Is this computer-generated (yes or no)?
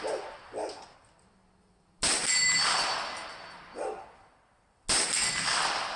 no